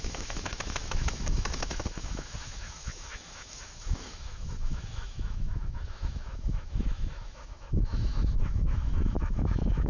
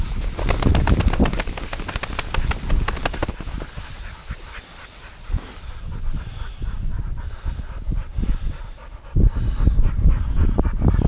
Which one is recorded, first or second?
second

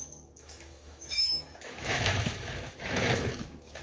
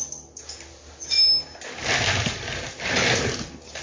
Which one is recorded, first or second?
second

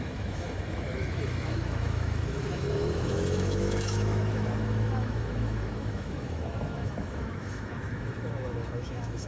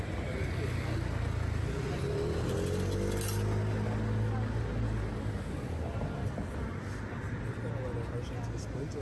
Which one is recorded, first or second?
second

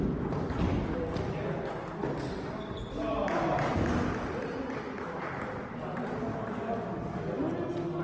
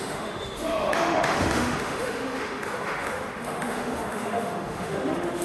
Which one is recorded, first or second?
first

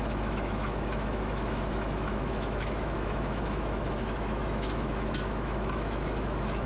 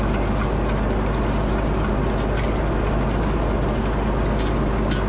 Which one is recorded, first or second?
second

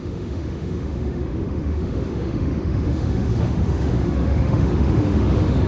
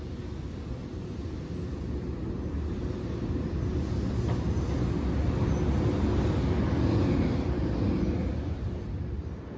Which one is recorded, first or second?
second